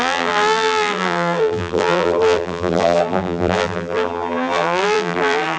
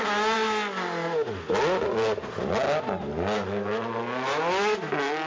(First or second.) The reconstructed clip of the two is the first